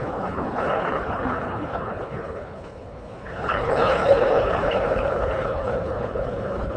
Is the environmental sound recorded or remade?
remade